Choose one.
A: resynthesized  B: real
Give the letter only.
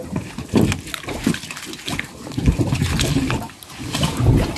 B